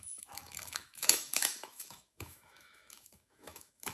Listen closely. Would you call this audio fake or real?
fake